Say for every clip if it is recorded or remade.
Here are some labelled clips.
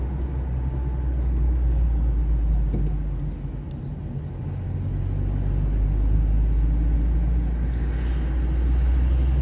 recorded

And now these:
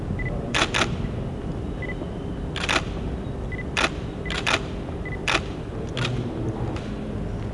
recorded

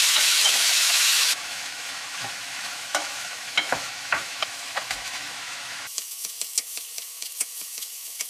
remade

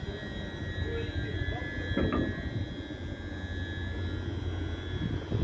recorded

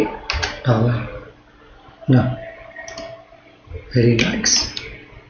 recorded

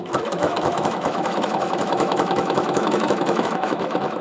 remade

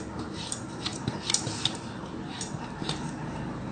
recorded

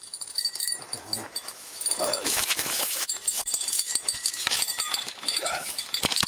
remade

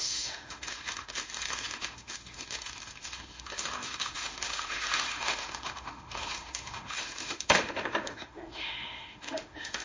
remade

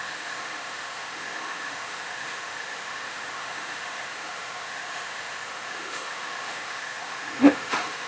remade